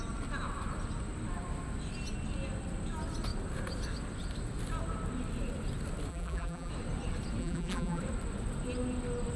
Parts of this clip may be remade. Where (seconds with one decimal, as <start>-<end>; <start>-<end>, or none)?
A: 6.1-6.7; 7.4-8.0